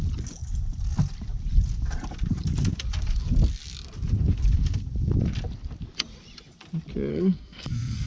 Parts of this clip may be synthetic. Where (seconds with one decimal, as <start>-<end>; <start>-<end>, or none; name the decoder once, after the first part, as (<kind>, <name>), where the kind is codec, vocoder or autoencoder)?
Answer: 7.1-8.1 (codec, SNAC)